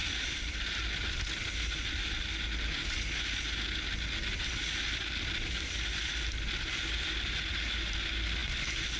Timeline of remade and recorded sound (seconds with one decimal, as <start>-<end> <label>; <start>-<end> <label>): 0.0-9.0 recorded